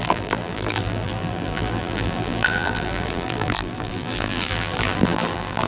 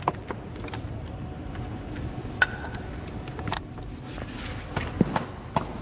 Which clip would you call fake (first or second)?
first